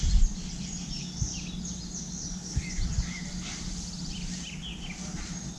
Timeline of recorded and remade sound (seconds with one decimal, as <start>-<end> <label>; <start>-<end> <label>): 0.0-5.6 recorded